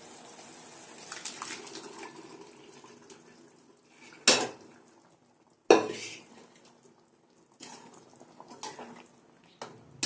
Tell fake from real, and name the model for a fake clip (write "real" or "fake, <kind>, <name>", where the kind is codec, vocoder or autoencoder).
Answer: real